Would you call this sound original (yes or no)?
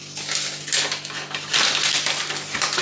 yes